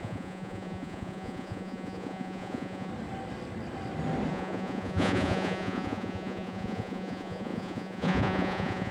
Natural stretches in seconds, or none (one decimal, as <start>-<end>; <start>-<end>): 2.9-4.3